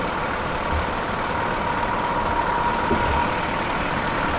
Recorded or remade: recorded